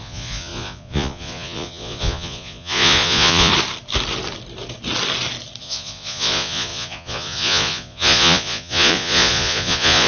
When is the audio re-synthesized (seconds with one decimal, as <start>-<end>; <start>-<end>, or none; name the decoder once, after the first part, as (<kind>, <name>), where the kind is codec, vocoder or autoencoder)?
0.0-3.5 (vocoder, Vocos); 5.6-10.1